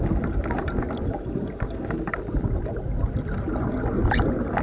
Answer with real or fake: real